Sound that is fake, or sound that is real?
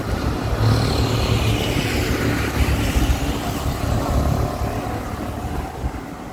real